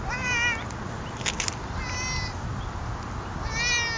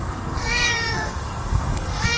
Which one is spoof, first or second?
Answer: second